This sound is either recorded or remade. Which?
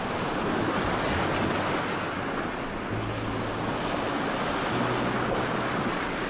recorded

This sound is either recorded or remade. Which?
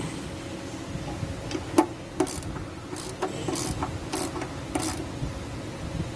recorded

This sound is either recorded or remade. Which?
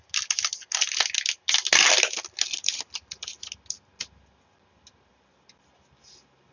recorded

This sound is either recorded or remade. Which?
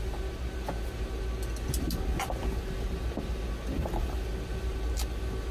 recorded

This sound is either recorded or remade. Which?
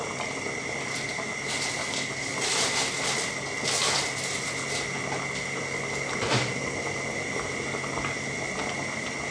recorded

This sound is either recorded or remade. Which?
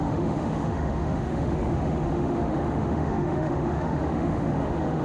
remade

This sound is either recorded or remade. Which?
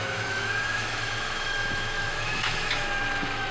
remade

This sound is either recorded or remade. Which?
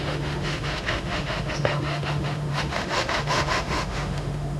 remade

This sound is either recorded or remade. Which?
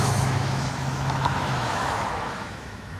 remade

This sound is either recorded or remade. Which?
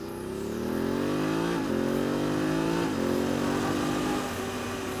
recorded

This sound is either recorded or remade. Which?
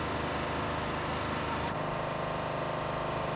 recorded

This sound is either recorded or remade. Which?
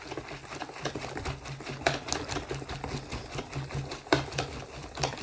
recorded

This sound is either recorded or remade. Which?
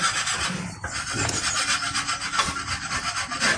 recorded